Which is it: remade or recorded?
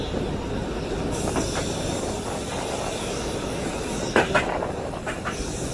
recorded